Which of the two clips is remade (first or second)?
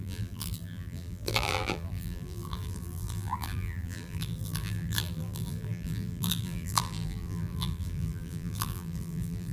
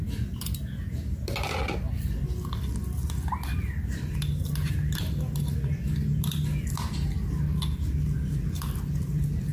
first